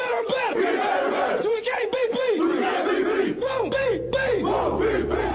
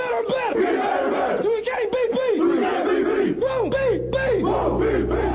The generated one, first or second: first